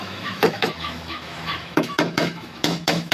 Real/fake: fake